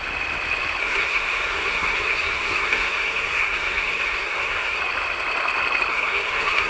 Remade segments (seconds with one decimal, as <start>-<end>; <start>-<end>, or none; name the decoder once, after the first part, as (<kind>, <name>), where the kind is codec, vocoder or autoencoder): 0.8-4.8 (codec, SNAC); 5.9-6.7